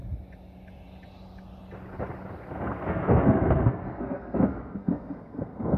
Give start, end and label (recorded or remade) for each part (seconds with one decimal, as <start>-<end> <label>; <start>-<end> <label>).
0.0-2.4 recorded; 2.4-5.8 remade